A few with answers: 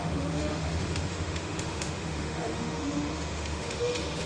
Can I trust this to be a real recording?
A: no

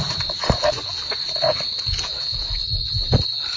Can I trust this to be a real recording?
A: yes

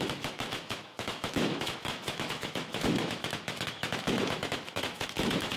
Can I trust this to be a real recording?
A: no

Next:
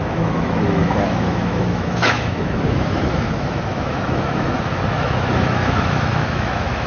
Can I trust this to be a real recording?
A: no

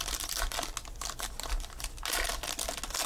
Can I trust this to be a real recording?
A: yes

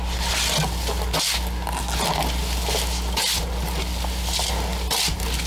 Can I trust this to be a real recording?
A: yes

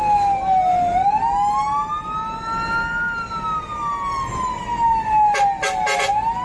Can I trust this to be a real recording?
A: yes